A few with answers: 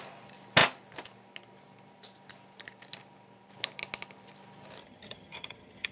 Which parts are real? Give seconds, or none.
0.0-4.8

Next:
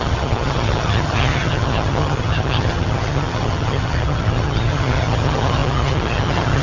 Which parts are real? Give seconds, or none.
none

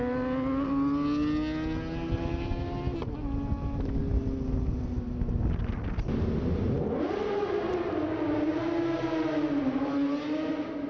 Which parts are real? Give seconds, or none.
0.0-10.9

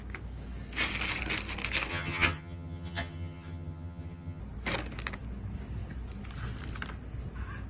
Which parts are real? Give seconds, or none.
0.0-1.9; 4.4-7.7

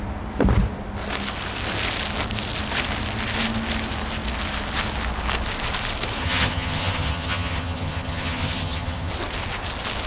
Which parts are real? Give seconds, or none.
0.0-6.2; 9.1-10.1

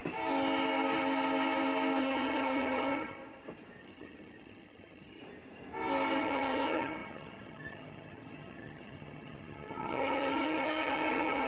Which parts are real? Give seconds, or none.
0.0-2.0; 3.2-3.8; 5.2-6.2